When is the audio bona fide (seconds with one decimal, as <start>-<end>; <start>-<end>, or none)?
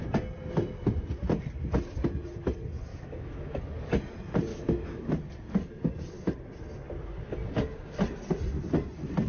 0.0-2.9; 3.6-4.5; 5.1-9.3